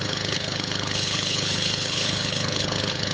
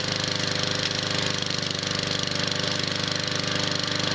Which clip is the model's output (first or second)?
first